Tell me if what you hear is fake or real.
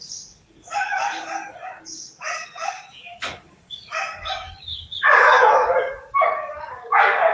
fake